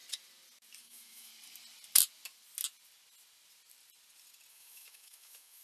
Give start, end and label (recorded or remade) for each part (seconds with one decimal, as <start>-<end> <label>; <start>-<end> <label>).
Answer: 0.0-0.8 recorded; 0.8-1.3 remade; 1.3-4.5 recorded; 4.5-5.6 remade